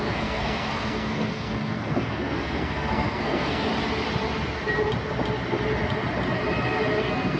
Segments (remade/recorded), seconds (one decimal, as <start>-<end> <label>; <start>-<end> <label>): 0.0-3.7 remade; 3.7-7.0 recorded; 7.0-7.4 remade

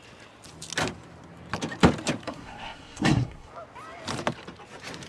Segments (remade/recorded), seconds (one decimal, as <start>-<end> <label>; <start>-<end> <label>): 0.0-2.2 recorded; 2.2-3.5 remade; 3.5-5.1 recorded

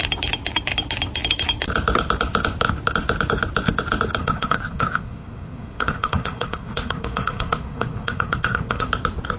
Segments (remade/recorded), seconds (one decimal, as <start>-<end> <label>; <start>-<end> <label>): 0.0-4.2 recorded; 4.2-8.9 remade; 8.9-9.4 recorded

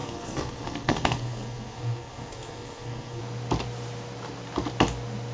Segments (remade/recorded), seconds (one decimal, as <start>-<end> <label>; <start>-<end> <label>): 0.0-3.2 remade; 3.2-5.3 recorded

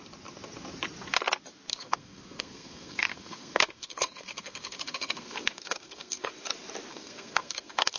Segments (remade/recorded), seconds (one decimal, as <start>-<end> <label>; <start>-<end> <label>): 0.0-1.7 recorded; 1.7-6.3 remade; 6.3-6.9 recorded; 6.9-8.0 remade

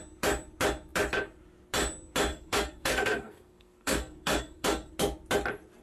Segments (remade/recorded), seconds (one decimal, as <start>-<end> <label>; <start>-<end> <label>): 0.0-2.3 recorded; 2.3-4.9 remade; 4.9-5.8 recorded

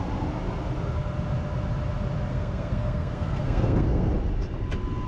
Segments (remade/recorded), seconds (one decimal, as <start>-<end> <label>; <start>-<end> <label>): 0.0-2.3 recorded; 2.3-4.1 remade; 4.1-5.1 recorded

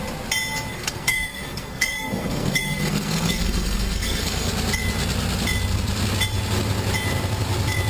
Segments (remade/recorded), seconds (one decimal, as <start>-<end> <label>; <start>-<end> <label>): 0.0-0.7 recorded; 0.7-4.5 remade; 4.5-7.9 recorded